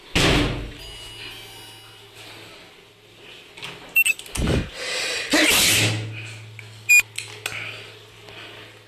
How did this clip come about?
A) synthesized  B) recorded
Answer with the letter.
B